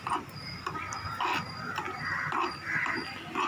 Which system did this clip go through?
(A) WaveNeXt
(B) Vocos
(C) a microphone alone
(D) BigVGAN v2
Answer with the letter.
C